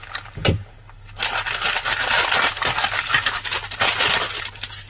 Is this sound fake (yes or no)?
no